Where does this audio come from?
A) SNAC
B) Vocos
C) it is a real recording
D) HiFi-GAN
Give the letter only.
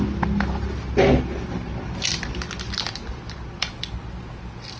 C